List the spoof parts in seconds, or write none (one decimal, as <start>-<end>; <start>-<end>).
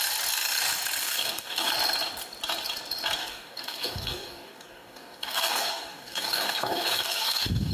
1.0-1.7; 3.2-7.7